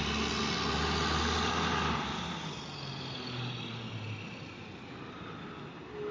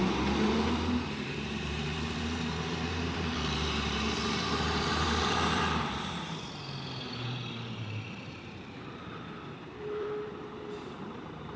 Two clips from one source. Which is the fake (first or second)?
second